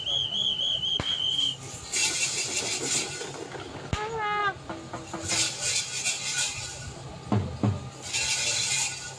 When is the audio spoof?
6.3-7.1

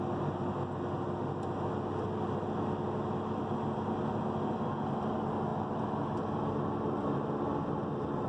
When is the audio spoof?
none

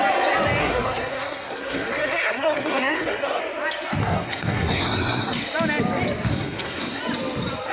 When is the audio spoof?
0.6-3.4; 4.0-5.4; 6.3-7.0

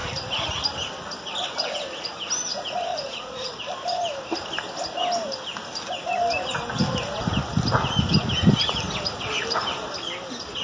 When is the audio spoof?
2.9-3.6

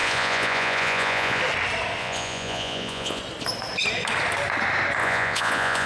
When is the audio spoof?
0.0-1.4; 2.0-3.2; 5.0-5.9

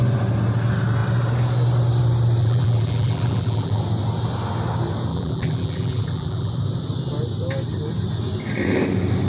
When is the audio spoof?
2.4-3.8; 5.1-6.5